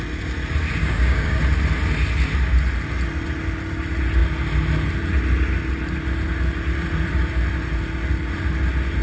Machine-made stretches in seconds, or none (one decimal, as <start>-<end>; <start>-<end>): 0.8-1.4